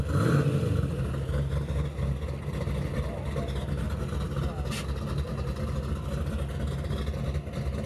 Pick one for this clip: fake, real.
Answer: real